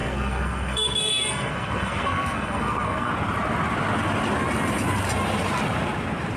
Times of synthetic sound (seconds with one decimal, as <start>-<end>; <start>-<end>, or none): 0.0-3.1